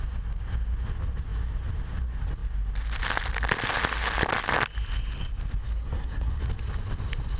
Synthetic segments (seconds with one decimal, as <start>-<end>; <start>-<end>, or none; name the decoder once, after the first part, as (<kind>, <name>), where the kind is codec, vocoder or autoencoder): 5.6-6.4 (codec, SNAC)